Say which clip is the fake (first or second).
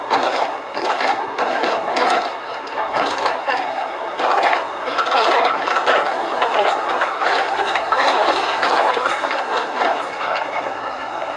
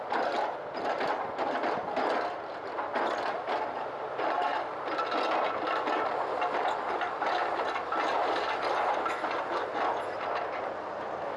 first